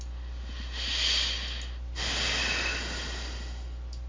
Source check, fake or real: real